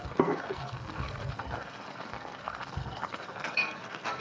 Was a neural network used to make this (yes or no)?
yes